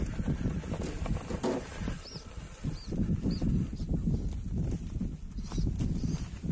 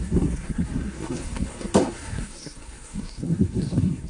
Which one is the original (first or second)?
first